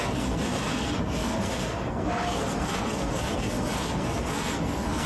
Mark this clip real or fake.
fake